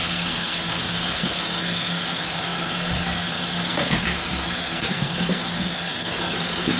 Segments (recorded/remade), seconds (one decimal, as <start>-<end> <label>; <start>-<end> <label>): 0.0-6.8 remade